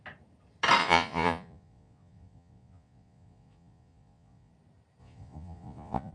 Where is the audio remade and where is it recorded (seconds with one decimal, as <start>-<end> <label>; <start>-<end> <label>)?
0.0-0.8 recorded; 0.8-4.5 remade; 4.5-5.0 recorded; 5.0-6.1 remade